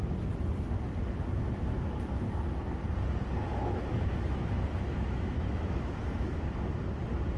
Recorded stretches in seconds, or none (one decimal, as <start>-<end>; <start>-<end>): 0.0-3.5; 6.6-7.4